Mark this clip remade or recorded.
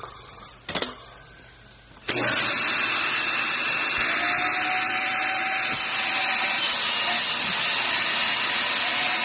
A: recorded